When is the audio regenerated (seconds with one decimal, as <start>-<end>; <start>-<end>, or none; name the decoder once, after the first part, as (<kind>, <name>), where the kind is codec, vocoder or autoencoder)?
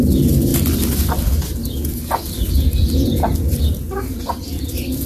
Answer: none